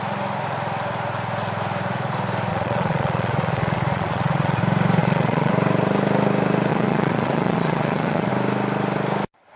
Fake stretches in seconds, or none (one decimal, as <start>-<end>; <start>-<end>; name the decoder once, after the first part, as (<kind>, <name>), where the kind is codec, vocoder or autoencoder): 2.5-4.6 (vocoder, Vocos); 5.0-5.5; 6.7-8.3